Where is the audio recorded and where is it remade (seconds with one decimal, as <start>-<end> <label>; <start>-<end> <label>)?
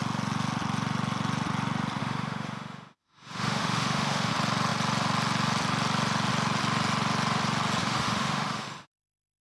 0.0-2.0 recorded; 2.0-4.3 remade; 4.3-7.8 recorded; 7.8-9.4 remade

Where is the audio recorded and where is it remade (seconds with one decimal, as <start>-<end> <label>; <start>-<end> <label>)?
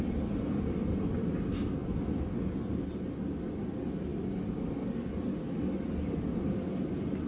0.0-7.3 recorded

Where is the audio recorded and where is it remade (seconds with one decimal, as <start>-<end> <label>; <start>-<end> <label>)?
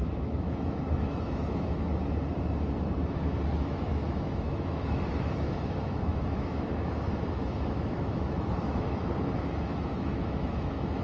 0.0-1.9 remade; 1.9-3.5 recorded; 3.5-11.0 remade